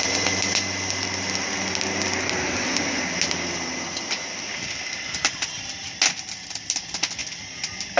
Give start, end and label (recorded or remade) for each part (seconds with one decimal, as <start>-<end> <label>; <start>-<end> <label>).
0.0-8.0 recorded